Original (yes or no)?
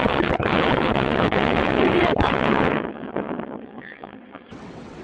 no